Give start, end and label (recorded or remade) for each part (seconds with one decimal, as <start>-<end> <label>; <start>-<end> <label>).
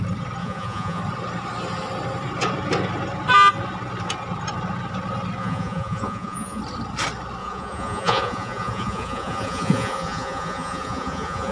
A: 0.0-0.4 recorded; 0.4-1.0 remade; 1.0-5.4 recorded; 5.4-6.6 remade; 6.6-7.4 recorded; 7.4-11.5 remade